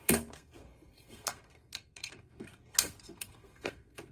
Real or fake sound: fake